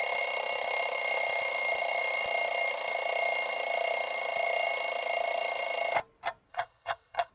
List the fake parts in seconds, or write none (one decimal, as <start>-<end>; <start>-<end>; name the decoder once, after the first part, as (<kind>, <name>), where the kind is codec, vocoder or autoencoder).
6.5-7.3 (codec, HILCodec)